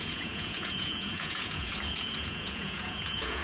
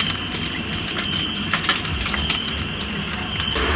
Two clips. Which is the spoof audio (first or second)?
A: first